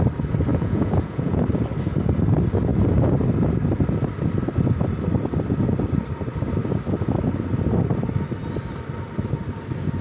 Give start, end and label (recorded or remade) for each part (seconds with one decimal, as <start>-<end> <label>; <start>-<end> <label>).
0.0-0.5 recorded; 0.5-1.4 remade; 1.4-10.0 recorded